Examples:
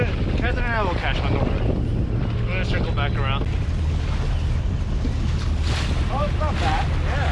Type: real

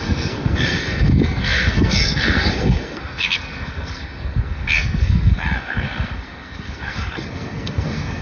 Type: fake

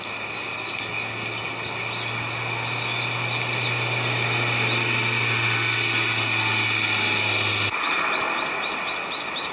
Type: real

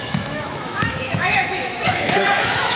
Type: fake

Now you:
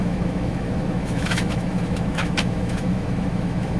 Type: fake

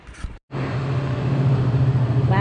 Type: real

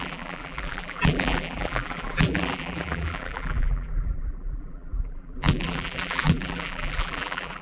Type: fake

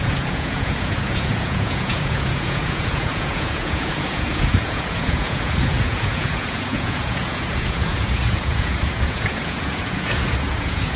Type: fake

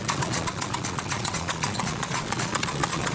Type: fake